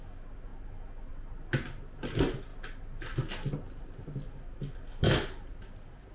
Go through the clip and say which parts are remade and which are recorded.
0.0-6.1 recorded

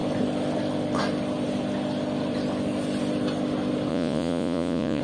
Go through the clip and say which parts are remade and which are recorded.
0.0-3.9 recorded; 3.9-5.0 remade

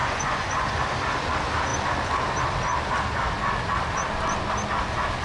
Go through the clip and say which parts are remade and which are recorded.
0.0-0.8 remade; 0.8-5.2 recorded

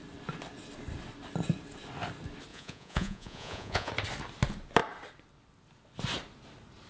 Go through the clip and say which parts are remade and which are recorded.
0.0-2.5 recorded; 2.5-3.9 remade; 3.9-6.9 recorded

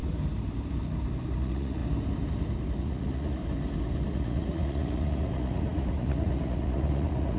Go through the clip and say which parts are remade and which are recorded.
0.0-1.4 recorded; 1.4-1.8 remade; 1.8-2.8 recorded; 2.8-3.4 remade; 3.4-4.1 recorded; 4.1-7.4 remade

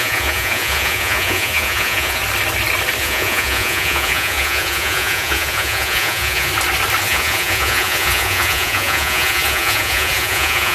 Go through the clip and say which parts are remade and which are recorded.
0.0-2.2 remade; 2.2-3.0 recorded; 3.0-6.5 remade; 6.5-7.0 recorded; 7.0-10.7 remade

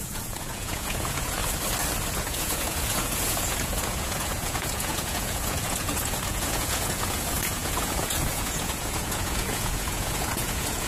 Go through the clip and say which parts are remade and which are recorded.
0.0-1.4 remade; 1.4-2.1 recorded; 2.1-10.9 remade

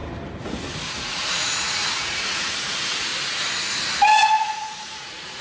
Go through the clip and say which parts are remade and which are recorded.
0.0-0.9 recorded; 0.9-3.1 remade; 3.1-4.4 recorded; 4.4-5.4 remade